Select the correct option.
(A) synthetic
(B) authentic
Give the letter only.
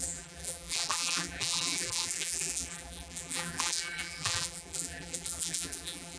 A